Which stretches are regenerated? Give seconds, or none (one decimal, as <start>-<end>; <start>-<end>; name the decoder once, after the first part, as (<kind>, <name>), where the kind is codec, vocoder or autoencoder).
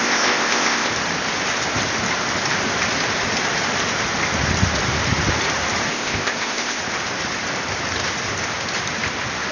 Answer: 0.0-0.9 (codec, ZipCodec); 5.9-6.8